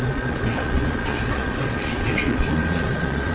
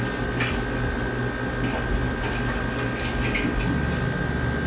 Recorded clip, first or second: second